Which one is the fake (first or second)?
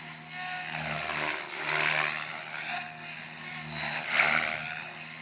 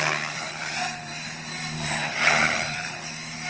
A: second